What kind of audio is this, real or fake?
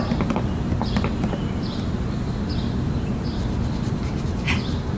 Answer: real